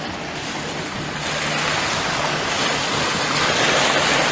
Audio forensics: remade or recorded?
recorded